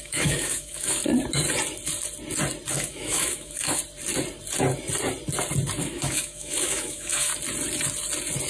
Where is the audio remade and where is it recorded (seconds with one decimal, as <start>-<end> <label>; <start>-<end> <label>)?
0.0-1.0 remade; 1.0-2.7 recorded; 2.7-3.8 remade; 3.8-5.8 recorded; 5.8-7.3 remade; 7.3-8.5 recorded